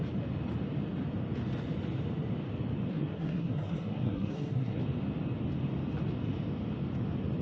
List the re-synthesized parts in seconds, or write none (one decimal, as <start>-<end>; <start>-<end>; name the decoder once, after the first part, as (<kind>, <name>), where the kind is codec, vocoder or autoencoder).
2.9-4.8 (codec, SNAC)